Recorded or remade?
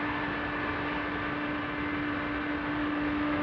recorded